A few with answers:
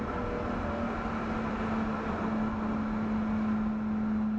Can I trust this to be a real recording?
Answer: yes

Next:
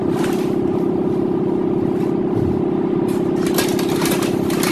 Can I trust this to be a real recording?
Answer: yes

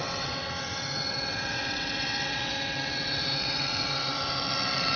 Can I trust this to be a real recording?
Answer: no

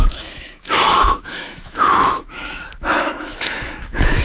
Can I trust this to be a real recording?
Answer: no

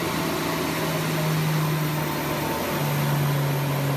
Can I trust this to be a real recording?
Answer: yes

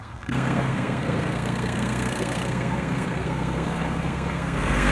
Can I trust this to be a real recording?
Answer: no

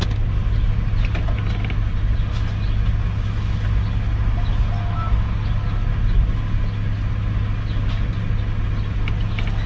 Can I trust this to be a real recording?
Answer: yes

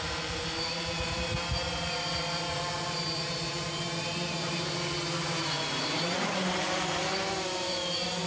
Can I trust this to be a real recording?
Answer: no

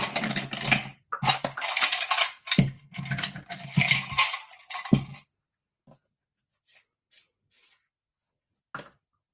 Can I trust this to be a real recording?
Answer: yes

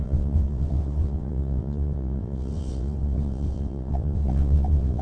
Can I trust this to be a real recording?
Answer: no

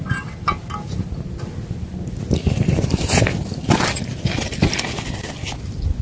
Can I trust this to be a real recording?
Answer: yes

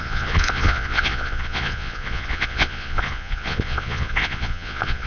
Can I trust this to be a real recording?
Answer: no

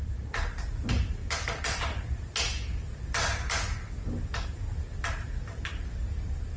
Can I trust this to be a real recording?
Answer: yes